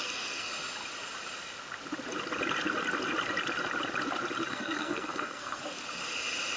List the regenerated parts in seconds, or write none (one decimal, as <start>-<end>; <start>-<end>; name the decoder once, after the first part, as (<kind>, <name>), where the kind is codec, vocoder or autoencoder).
0.0-0.5 (codec, SNAC); 4.5-5.6